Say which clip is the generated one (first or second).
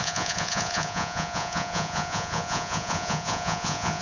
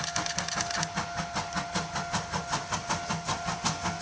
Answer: first